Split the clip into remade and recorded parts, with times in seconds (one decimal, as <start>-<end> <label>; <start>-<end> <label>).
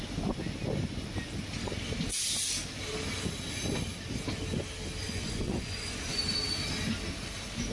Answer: 0.0-5.0 recorded; 5.0-6.2 remade; 6.2-7.7 recorded